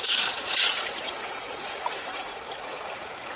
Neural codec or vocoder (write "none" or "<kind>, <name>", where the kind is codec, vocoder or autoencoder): vocoder, Vocos